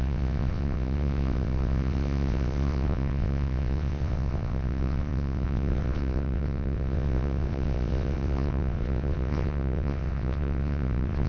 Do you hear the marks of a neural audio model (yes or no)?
yes